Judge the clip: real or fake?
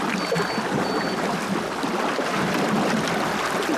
real